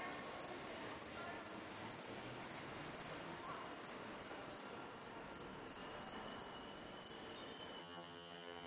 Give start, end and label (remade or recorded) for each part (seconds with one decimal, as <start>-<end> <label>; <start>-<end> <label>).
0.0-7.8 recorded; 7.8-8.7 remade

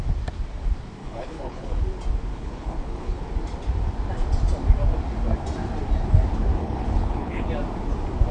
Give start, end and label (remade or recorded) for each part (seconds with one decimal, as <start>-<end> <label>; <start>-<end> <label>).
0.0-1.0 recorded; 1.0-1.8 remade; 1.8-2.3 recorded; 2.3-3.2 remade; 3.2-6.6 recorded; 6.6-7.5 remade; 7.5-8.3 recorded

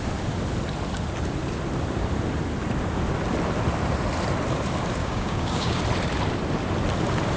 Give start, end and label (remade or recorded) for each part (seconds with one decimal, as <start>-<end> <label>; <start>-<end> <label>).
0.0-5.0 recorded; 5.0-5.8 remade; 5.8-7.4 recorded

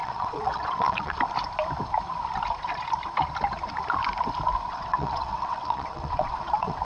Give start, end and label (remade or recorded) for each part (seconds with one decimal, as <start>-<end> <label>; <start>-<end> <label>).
0.0-1.2 remade; 1.2-4.7 recorded; 4.7-6.8 remade

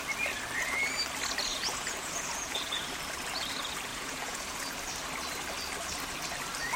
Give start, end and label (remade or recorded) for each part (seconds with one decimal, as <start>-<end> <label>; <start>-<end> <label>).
0.0-1.5 recorded; 1.5-3.0 remade; 3.0-3.9 recorded; 3.9-4.7 remade; 4.7-6.8 recorded